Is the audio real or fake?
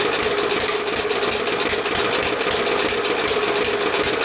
real